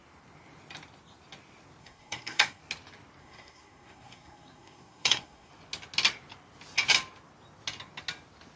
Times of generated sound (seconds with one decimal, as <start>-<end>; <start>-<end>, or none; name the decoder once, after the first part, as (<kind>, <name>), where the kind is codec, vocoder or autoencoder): 1.8-2.6 (codec, SNAC); 3.2-5.5